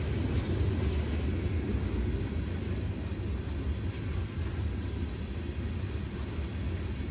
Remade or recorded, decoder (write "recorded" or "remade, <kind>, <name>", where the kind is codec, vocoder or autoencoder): recorded